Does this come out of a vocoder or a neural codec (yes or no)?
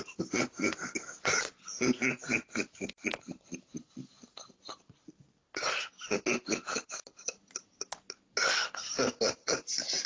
no